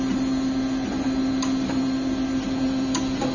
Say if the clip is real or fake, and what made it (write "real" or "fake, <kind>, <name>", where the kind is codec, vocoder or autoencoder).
real